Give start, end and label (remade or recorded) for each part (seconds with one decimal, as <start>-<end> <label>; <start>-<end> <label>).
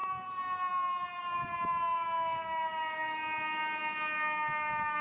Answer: 0.0-5.0 recorded